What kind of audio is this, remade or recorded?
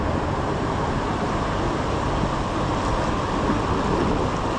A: recorded